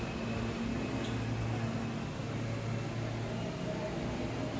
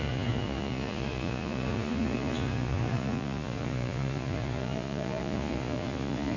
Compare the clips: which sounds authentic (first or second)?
first